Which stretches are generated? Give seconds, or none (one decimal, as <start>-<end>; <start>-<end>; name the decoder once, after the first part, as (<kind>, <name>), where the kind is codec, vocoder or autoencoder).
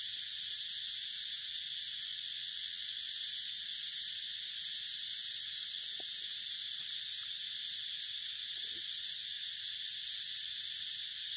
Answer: 2.1-3.0 (vocoder, Vocos)